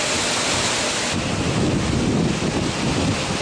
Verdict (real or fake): real